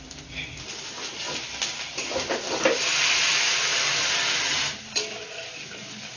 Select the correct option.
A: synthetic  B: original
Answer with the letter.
B